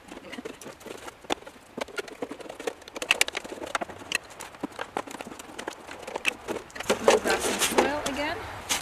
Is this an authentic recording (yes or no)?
yes